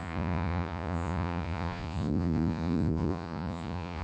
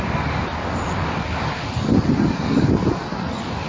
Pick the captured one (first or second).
second